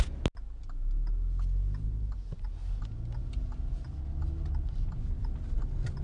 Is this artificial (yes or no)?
no